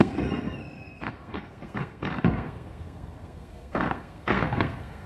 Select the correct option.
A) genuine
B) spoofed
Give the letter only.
B